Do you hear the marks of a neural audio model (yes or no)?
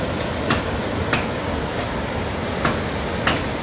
no